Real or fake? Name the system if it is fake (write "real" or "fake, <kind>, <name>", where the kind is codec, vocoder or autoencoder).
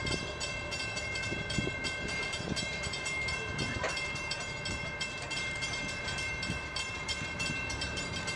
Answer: fake, vocoder, BigVGAN v2